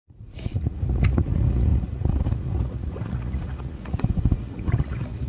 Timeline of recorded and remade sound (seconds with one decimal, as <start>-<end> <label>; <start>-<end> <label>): 0.0-5.3 remade